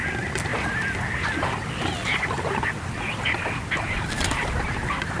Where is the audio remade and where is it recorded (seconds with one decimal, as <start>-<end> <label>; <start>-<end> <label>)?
0.0-5.2 recorded